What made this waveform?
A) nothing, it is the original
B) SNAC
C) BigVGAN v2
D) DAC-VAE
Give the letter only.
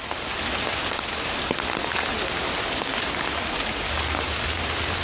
A